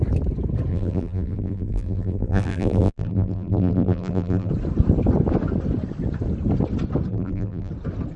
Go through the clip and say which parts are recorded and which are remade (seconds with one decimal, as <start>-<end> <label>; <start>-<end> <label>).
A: 0.0-0.7 recorded; 0.7-4.5 remade; 4.5-7.1 recorded; 7.1-7.7 remade; 7.7-8.2 recorded